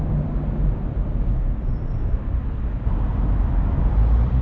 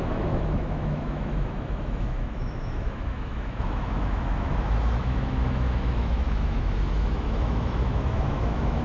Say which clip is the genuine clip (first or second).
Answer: first